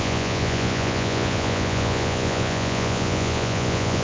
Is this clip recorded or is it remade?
remade